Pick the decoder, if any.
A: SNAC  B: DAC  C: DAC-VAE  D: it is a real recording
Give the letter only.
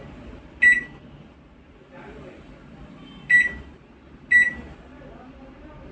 D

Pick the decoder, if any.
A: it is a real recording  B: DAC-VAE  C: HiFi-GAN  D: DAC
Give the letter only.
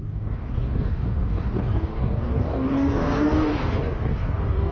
D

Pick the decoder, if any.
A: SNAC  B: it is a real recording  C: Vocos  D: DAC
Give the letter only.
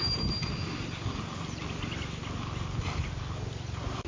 B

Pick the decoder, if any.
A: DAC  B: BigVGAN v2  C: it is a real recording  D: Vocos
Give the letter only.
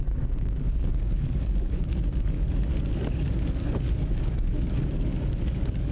A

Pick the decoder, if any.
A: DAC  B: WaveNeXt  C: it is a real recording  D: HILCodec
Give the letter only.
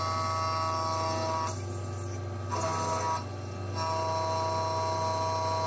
C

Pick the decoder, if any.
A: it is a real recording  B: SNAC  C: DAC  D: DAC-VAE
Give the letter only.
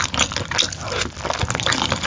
A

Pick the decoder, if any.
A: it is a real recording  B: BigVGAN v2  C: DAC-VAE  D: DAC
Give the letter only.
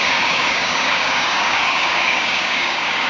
D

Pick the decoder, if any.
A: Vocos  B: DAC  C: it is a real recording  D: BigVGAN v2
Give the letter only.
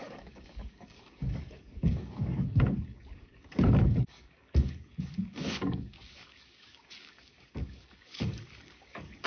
B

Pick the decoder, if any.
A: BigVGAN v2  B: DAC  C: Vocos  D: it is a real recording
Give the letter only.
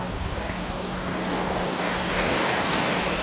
B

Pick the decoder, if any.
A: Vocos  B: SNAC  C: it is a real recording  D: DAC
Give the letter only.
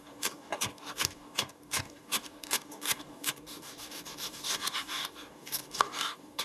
D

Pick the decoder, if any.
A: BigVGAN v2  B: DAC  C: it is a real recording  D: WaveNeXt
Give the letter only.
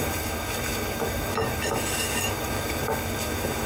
B